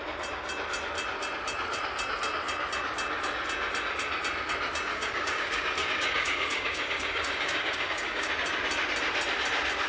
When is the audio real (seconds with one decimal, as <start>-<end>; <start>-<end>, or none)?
0.0-4.9; 8.3-9.9